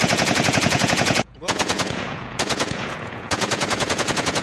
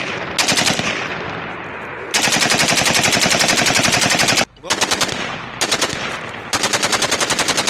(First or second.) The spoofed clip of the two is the first